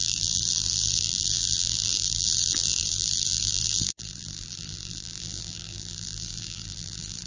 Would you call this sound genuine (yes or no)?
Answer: no